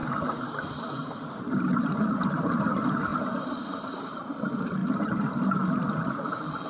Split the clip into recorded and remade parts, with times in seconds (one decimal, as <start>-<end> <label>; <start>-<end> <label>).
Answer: 0.0-1.4 recorded; 1.4-3.1 remade; 3.1-3.7 recorded; 3.7-6.7 remade